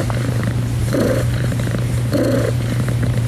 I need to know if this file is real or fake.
fake